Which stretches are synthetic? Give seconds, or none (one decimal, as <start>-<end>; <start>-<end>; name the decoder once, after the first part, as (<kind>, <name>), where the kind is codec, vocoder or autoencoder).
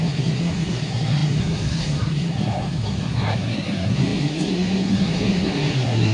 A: 0.0-6.1 (codec, SNAC)